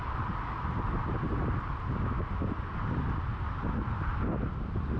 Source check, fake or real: real